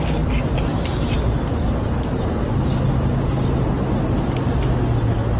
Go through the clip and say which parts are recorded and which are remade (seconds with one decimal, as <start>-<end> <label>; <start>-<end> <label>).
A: 0.0-5.4 recorded